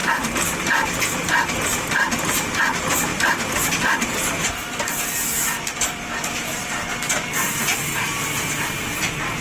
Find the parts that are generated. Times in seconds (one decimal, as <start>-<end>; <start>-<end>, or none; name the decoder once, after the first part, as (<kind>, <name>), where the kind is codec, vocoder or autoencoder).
0.0-1.1 (vocoder, BigVGAN v2); 3.1-7.5